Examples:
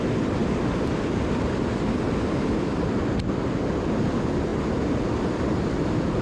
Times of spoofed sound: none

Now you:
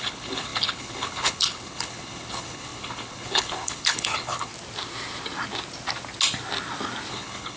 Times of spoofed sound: 0.0-4.5 (codec, HILCodec); 7.1-7.6

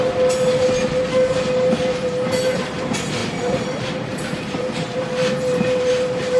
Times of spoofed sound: 3.2-4.4 (vocoder, BigVGAN v2); 4.9-6.4